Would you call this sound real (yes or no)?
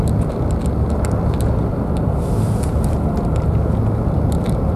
yes